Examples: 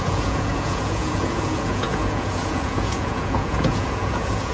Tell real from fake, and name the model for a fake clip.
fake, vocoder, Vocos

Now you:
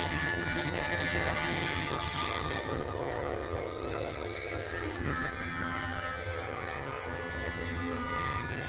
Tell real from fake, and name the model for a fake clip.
fake, vocoder, HiFi-GAN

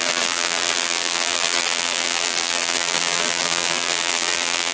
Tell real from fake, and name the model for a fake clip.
fake, vocoder, BigVGAN v2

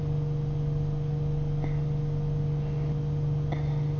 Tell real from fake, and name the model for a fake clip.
real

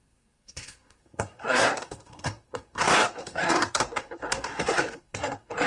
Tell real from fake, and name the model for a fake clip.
fake, codec, SNAC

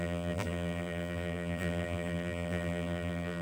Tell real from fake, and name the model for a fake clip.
fake, vocoder, BigVGAN v2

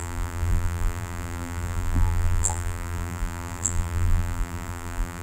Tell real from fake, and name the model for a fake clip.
fake, vocoder, BigVGAN v2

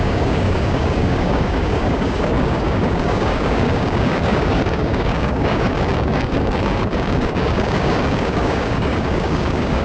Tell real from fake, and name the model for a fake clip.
fake, codec, DAC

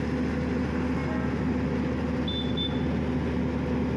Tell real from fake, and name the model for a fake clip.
real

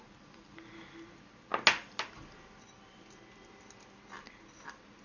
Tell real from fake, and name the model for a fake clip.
real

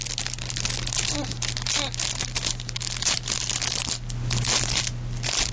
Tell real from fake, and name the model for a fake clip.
real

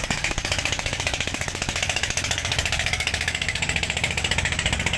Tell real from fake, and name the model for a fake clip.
fake, codec, DAC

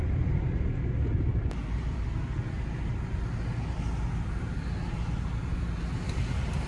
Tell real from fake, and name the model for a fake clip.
real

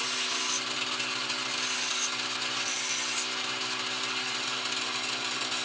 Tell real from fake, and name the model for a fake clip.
real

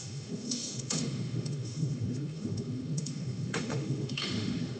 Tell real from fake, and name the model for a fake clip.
fake, autoencoder, DAC-VAE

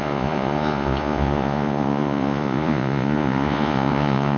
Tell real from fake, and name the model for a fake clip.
fake, vocoder, Vocos